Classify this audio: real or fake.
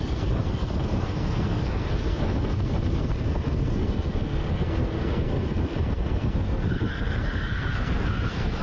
fake